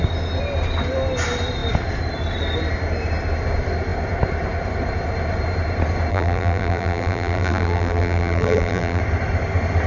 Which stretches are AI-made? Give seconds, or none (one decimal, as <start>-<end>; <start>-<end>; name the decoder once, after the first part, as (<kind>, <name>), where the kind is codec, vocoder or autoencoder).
6.1-9.0 (vocoder, BigVGAN v2)